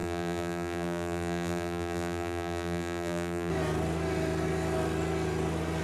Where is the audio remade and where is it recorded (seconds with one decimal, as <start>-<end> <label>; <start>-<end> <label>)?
0.0-3.5 remade; 3.5-5.8 recorded